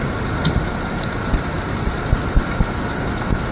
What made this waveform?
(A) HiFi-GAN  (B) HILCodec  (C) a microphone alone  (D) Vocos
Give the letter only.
C